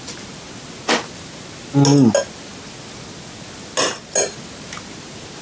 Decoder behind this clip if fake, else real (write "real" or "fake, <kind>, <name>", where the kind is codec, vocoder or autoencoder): real